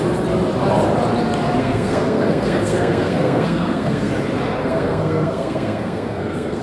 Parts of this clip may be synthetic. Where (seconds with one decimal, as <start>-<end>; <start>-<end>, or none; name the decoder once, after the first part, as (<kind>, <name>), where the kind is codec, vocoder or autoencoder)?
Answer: 1.6-4.1 (codec, SNAC); 4.6-6.6